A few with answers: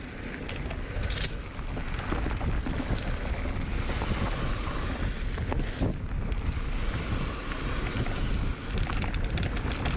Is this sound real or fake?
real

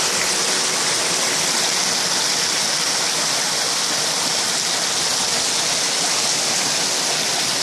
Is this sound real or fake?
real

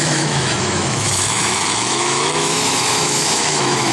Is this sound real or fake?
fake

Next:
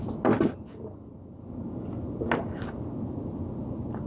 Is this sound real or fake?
real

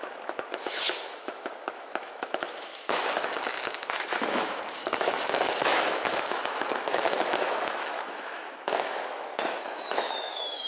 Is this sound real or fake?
fake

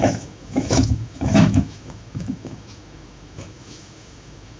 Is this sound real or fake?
fake